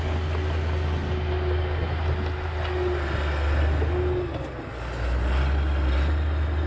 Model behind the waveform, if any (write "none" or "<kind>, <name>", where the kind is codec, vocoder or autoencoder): none